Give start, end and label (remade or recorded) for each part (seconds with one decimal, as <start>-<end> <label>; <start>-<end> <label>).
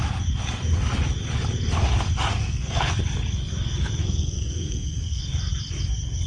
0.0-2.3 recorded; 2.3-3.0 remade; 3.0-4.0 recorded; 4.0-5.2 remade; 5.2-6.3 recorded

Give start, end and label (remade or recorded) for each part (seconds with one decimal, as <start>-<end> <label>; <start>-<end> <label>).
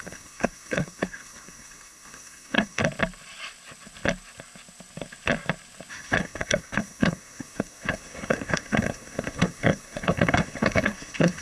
0.0-2.8 remade; 2.8-5.9 recorded; 5.9-11.4 remade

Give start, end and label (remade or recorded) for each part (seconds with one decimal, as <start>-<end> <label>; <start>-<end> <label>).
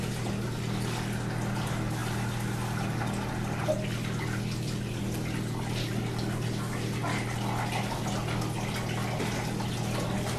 0.0-10.4 recorded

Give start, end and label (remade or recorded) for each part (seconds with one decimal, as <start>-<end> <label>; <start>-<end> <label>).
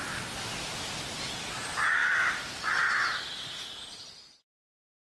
0.0-5.1 recorded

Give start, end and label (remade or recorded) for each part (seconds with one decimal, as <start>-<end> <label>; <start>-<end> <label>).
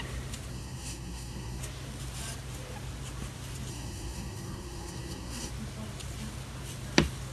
0.0-0.5 recorded; 0.5-1.6 remade; 1.6-3.7 recorded; 3.7-5.5 remade; 5.5-7.3 recorded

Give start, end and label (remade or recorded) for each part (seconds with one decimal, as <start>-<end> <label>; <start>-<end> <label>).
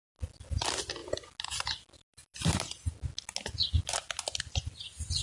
0.0-5.2 recorded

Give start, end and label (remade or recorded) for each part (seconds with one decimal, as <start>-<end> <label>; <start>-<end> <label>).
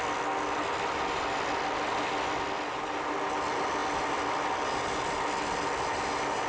0.0-6.5 recorded